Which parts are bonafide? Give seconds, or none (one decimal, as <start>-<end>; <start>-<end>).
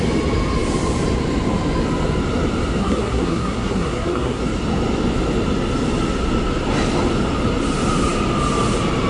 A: 0.0-2.8; 4.4-9.1